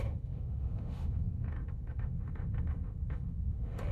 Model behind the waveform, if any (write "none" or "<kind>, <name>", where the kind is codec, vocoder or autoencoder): autoencoder, DAC-VAE